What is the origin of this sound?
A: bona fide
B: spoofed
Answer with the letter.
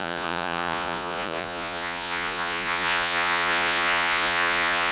B